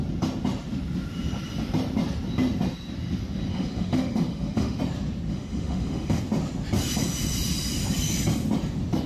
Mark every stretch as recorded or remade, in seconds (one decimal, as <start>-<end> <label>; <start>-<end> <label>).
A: 0.0-3.5 recorded; 3.5-4.8 remade; 4.8-5.3 recorded; 5.3-6.2 remade; 6.2-9.1 recorded